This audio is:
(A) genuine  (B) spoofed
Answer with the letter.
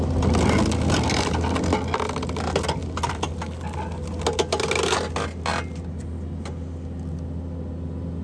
A